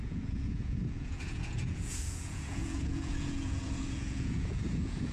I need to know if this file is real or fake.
fake